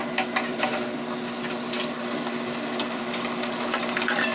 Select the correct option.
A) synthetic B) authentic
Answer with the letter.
A